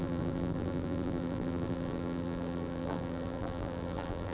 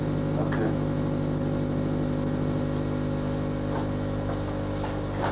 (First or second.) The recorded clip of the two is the second